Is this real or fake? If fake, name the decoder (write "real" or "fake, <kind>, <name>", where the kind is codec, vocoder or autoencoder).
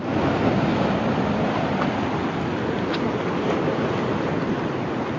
real